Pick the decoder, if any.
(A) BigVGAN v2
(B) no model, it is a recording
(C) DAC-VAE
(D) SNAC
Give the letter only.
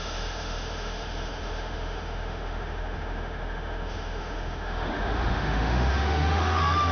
C